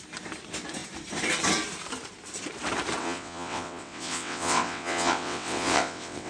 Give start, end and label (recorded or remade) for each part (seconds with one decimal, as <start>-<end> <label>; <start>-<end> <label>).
0.0-3.0 recorded; 3.0-6.3 remade